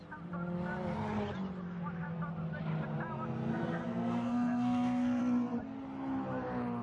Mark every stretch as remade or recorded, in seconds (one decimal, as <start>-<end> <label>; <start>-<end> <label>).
0.0-3.5 recorded; 3.5-5.2 remade; 5.2-6.8 recorded